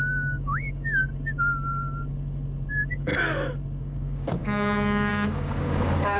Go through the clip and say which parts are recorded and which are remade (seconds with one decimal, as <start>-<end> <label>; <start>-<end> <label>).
0.0-1.1 remade; 1.1-2.7 recorded; 2.7-3.1 remade; 3.1-3.8 recorded; 3.8-6.2 remade